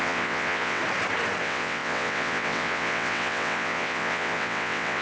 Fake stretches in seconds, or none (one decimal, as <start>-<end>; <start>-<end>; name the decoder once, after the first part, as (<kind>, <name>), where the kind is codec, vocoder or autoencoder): 0.0-0.8 (vocoder, WaveNeXt); 1.4-5.0